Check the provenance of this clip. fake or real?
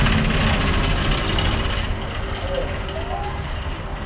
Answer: real